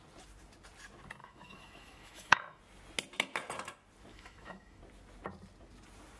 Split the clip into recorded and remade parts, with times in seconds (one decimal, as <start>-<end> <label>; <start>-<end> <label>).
0.0-1.2 recorded; 1.2-2.6 remade; 2.6-4.1 recorded; 4.1-4.8 remade; 4.8-6.2 recorded